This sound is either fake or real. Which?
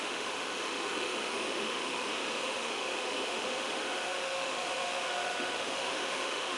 fake